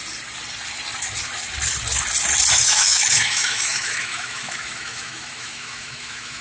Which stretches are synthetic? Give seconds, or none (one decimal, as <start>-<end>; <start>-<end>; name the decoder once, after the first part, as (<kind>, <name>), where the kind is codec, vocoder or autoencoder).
2.5-6.4 (autoencoder, DAC-VAE)